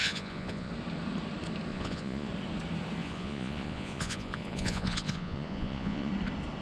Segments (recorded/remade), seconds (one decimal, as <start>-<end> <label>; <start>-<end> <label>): 0.0-0.7 remade; 0.7-1.7 recorded; 1.7-2.3 remade; 2.3-3.0 recorded; 3.0-6.1 remade; 6.1-6.6 recorded